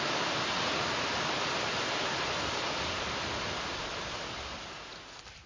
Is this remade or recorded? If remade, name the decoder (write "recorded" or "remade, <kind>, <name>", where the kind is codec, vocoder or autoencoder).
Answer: recorded